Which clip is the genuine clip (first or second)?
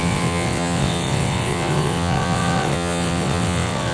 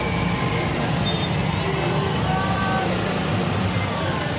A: second